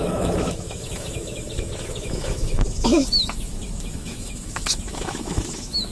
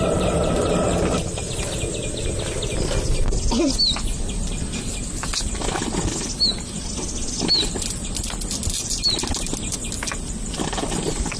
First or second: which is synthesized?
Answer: first